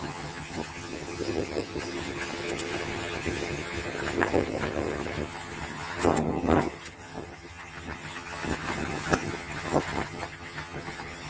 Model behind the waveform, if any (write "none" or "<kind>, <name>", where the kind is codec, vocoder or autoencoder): vocoder, HiFi-GAN